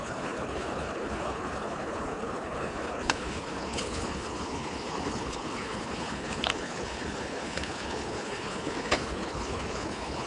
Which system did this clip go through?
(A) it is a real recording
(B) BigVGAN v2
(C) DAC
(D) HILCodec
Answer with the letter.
D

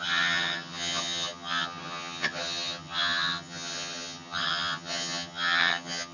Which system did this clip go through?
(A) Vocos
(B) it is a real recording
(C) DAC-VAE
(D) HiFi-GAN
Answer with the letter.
D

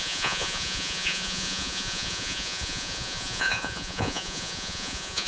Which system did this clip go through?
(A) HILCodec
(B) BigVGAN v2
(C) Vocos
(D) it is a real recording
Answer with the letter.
C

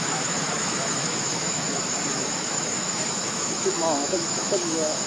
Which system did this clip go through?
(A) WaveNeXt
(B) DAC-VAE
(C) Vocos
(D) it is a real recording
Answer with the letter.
B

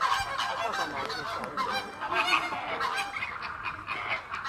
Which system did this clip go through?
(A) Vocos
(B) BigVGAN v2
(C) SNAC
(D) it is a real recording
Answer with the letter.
D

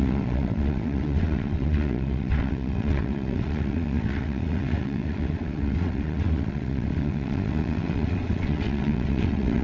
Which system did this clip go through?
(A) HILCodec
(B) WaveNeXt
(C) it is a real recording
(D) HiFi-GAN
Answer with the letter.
B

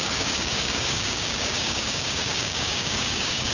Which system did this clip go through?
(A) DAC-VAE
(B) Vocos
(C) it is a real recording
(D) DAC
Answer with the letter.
D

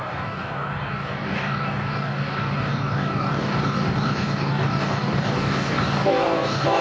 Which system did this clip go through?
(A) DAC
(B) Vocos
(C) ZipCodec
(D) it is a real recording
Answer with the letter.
A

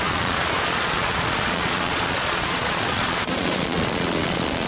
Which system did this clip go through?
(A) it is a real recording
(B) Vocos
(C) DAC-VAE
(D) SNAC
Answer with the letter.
B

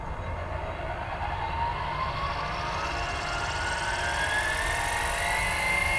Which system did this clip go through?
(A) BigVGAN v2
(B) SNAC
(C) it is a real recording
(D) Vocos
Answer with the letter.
C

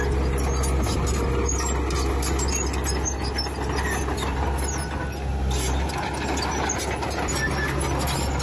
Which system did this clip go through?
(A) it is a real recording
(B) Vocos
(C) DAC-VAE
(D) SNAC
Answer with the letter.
A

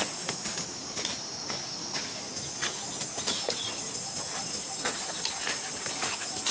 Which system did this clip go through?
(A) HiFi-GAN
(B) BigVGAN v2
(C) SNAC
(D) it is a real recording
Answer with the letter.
D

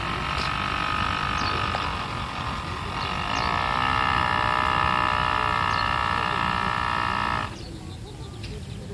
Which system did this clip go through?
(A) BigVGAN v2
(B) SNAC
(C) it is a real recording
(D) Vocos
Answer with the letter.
C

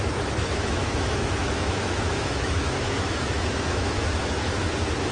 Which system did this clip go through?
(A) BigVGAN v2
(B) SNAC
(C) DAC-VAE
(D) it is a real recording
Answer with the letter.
C